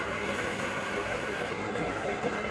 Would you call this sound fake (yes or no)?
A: yes